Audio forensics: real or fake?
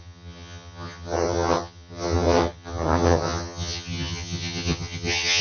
fake